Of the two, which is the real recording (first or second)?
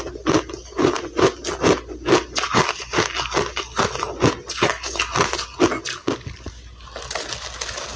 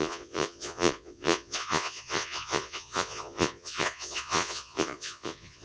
first